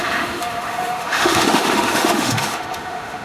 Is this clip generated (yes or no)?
yes